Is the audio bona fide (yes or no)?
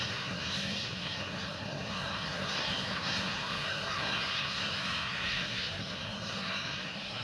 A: no